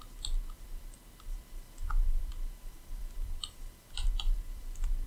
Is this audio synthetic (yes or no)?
yes